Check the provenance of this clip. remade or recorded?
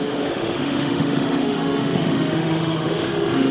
remade